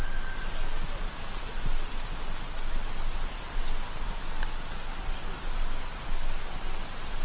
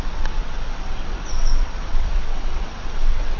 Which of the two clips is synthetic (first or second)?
second